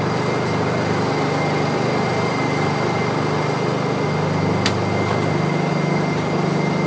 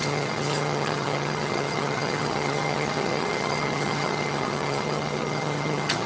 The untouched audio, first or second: first